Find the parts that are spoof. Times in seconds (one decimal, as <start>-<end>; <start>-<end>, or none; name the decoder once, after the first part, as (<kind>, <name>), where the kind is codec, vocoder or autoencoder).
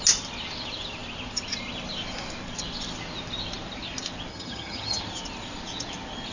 4.3-5.0 (vocoder, HiFi-GAN)